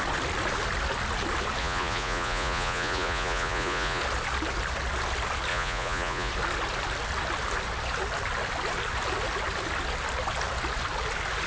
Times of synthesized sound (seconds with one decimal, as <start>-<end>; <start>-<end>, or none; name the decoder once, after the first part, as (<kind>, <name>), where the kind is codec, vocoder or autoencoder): 1.6-4.0 (vocoder, Vocos); 5.5-6.3